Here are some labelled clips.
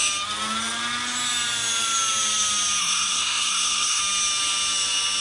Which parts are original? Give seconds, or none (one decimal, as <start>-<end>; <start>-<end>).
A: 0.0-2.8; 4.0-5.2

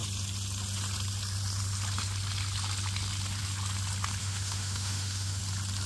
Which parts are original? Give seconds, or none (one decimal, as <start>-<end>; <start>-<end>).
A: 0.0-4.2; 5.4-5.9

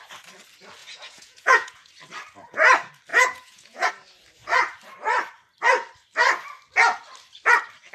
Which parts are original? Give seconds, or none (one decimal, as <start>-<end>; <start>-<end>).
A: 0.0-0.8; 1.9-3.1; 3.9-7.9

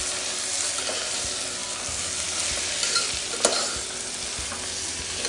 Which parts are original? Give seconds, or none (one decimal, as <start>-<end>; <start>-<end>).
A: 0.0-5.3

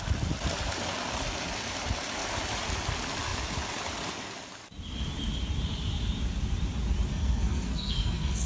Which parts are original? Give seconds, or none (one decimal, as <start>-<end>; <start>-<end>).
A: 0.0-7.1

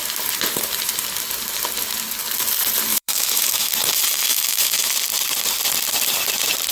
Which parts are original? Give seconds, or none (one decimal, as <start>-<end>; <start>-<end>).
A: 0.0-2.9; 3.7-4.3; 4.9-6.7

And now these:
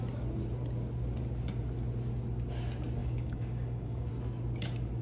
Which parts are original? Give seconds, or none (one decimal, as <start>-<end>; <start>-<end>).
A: 0.0-3.0; 4.1-5.0

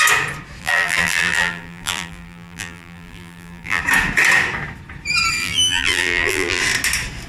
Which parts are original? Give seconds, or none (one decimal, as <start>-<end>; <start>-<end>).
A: 0.0-0.6; 3.8-5.4; 6.6-7.3